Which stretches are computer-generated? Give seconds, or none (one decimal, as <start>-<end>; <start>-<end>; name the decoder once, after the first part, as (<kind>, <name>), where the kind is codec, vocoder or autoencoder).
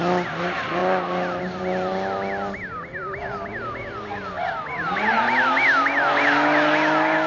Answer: none